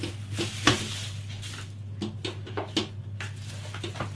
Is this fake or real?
real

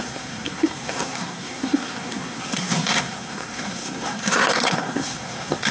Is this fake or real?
fake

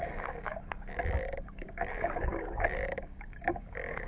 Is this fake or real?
fake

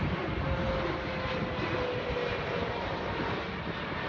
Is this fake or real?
real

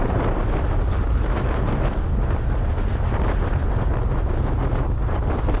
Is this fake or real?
real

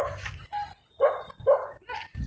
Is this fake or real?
real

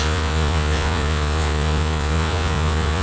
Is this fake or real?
fake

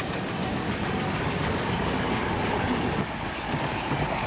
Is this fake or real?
fake